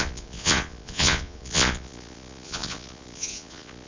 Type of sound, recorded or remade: remade